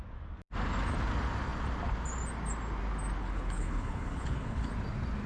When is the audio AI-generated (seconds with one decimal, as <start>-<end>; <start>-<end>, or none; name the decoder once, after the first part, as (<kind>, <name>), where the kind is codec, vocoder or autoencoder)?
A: 3.2-4.7 (codec, HILCodec)